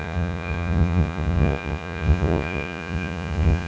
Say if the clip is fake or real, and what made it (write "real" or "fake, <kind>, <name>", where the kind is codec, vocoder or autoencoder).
fake, vocoder, Vocos